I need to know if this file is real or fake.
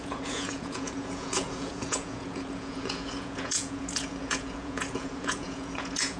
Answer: fake